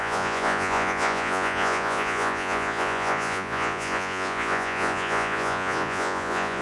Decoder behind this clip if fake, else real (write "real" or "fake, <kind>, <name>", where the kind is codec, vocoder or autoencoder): fake, vocoder, Vocos